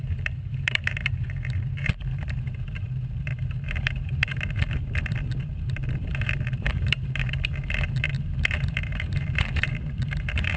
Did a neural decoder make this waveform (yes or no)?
yes